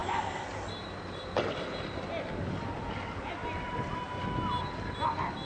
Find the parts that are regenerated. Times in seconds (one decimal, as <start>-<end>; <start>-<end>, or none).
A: 0.0-2.1